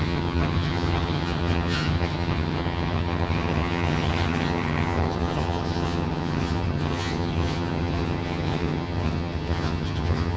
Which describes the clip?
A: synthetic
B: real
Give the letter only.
A